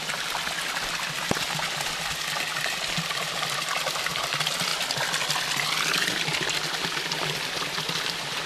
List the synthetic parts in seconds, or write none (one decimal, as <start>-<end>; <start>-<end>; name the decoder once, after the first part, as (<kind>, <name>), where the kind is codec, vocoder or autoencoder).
none